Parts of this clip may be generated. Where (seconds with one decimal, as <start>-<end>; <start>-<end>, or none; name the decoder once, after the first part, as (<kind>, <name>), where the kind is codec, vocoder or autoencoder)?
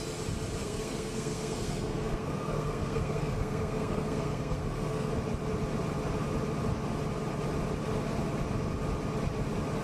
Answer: 0.6-5.1 (codec, SNAC)